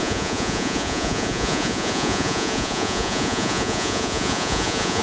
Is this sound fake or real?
fake